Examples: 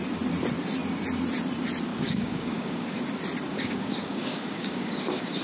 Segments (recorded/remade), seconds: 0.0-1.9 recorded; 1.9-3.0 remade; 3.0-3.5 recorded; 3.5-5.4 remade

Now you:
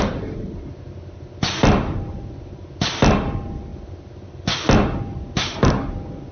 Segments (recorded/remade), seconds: 0.0-6.3 recorded

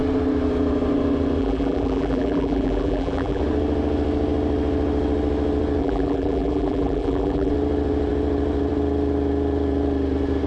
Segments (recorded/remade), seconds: 0.0-1.4 recorded; 1.4-3.4 remade; 3.4-5.8 recorded; 5.8-7.5 remade; 7.5-10.5 recorded

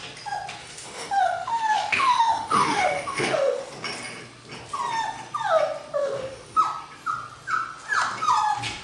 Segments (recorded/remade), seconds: 0.0-0.6 recorded; 0.6-3.6 remade; 3.6-6.0 recorded; 6.0-6.6 remade; 6.6-8.8 recorded

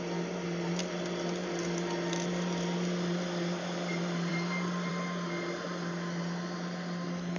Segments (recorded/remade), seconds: 0.0-7.4 recorded

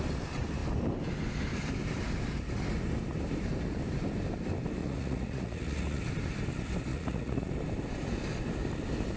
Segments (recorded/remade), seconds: 0.0-4.8 recorded; 4.8-6.0 remade; 6.0-6.9 recorded; 6.9-7.5 remade; 7.5-9.2 recorded

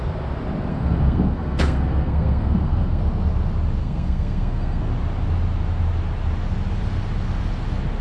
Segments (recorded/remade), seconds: 0.0-0.7 recorded; 0.7-3.0 remade; 3.0-3.8 recorded; 3.8-4.9 remade; 4.9-8.0 recorded

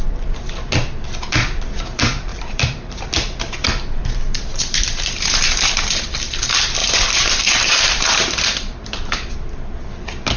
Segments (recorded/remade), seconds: 0.0-2.3 recorded; 2.3-3.0 remade; 3.0-3.6 recorded; 3.6-6.2 remade; 6.2-6.8 recorded; 6.8-9.3 remade; 9.3-10.4 recorded